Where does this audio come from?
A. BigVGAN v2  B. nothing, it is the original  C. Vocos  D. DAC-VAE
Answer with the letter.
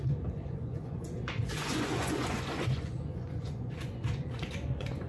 C